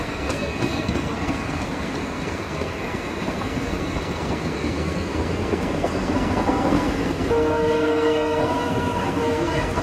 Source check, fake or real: fake